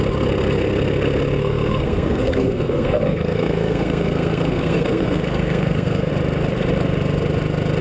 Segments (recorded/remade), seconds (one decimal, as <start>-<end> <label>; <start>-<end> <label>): 0.0-1.4 recorded; 1.4-6.1 remade; 6.1-7.8 recorded